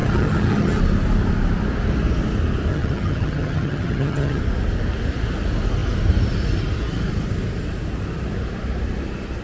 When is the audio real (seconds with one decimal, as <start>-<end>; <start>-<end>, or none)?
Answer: 0.8-2.7; 4.4-9.4

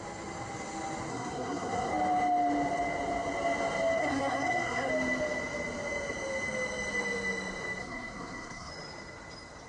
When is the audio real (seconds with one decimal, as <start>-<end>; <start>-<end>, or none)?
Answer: 0.0-1.1; 1.9-4.0; 4.9-7.8; 8.7-9.7